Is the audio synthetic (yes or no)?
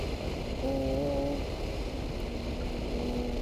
no